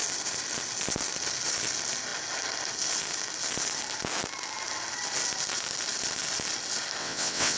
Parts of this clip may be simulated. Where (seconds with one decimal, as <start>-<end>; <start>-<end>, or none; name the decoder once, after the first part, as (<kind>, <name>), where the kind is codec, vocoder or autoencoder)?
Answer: 7.0-7.6 (vocoder, WaveNeXt)